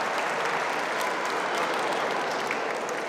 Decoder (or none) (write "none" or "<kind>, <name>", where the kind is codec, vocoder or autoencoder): none